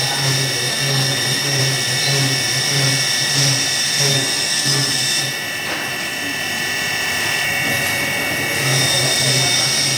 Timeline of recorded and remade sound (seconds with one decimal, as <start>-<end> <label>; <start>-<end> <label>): 0.0-0.7 recorded; 0.7-1.6 remade; 1.6-4.1 recorded; 4.1-5.0 remade; 5.0-10.0 recorded